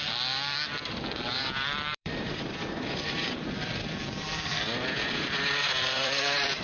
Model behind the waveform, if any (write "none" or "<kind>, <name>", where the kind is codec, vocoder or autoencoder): vocoder, BigVGAN v2